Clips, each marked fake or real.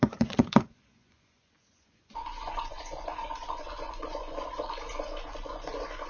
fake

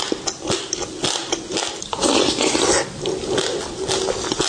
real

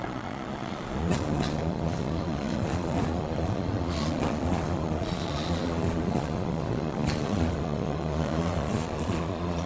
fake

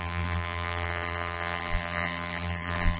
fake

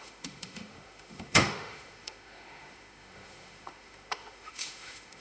fake